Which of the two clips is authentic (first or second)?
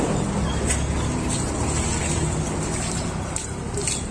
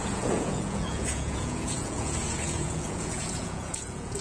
first